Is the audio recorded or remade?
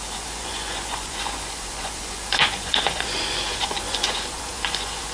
remade